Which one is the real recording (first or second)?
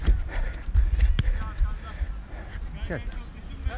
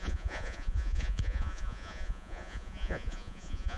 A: first